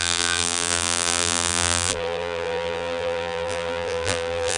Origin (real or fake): fake